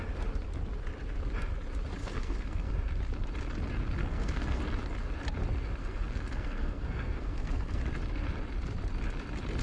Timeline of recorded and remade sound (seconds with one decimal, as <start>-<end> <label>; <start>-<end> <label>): 0.0-2.0 recorded; 2.0-2.7 remade; 2.7-4.0 recorded; 4.0-4.6 remade; 4.6-5.8 recorded; 5.8-7.8 remade; 7.8-9.6 recorded